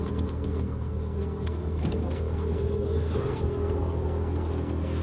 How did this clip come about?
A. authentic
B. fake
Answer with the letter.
B